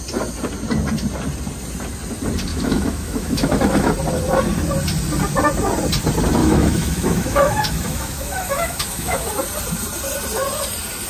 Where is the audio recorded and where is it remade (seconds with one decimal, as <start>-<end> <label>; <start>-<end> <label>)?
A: 0.0-2.5 recorded; 2.5-3.9 remade; 3.9-6.4 recorded; 6.4-9.3 remade; 9.3-11.1 recorded